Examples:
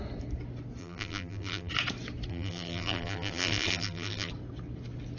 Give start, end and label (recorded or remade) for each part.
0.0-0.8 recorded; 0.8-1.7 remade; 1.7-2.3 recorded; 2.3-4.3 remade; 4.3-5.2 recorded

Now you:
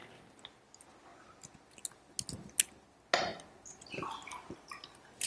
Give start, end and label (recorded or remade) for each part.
0.0-5.3 recorded

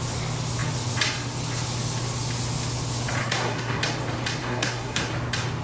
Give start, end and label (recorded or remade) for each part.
0.0-3.2 recorded; 3.2-3.8 remade; 3.8-4.4 recorded; 4.4-5.1 remade; 5.1-5.6 recorded

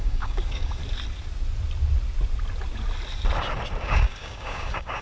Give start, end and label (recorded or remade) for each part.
0.0-0.8 remade; 0.8-3.8 recorded; 3.8-5.0 remade

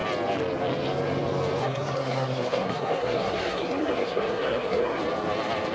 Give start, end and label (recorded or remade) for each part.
0.0-1.6 recorded; 1.6-5.0 remade; 5.0-5.7 recorded

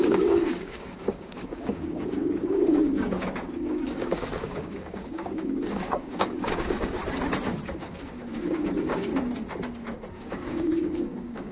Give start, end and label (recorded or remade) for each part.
0.0-7.0 remade; 7.0-7.7 recorded; 7.7-9.1 remade; 9.1-10.1 recorded; 10.1-11.5 remade

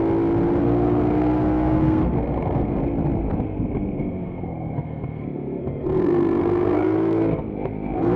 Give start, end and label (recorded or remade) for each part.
0.0-0.6 recorded; 0.6-2.8 remade; 2.8-3.3 recorded; 3.3-8.2 remade